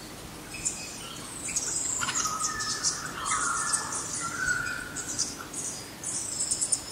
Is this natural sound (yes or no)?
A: yes